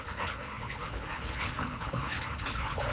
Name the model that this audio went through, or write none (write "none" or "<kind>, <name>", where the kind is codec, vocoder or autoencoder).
codec, HILCodec